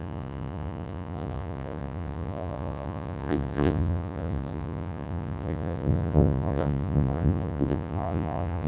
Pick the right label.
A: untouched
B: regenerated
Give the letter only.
B